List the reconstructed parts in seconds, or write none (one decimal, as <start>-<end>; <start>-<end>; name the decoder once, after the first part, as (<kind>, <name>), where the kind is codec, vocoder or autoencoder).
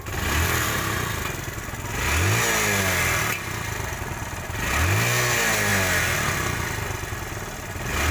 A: none